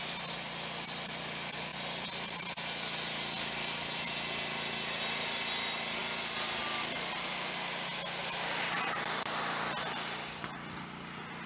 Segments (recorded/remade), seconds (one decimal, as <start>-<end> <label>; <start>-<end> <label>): 0.0-11.5 recorded